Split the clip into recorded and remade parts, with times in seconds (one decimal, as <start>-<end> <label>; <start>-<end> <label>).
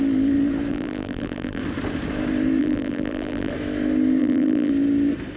0.0-0.7 recorded; 0.7-1.6 remade; 1.6-2.6 recorded; 2.6-3.5 remade; 3.5-4.2 recorded; 4.2-4.7 remade; 4.7-5.4 recorded